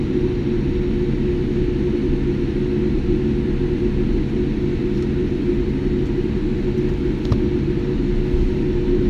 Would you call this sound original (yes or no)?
yes